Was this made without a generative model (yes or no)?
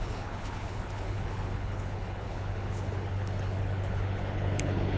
no